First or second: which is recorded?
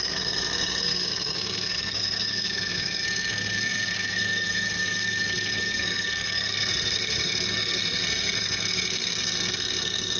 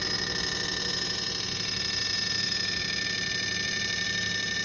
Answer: second